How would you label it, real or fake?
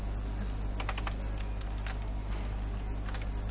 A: real